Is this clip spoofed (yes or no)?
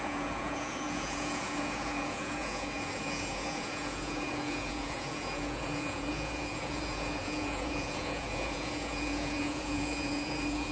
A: yes